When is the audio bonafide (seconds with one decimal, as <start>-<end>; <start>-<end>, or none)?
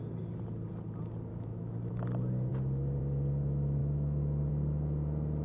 0.0-1.3; 1.9-3.8; 4.5-5.4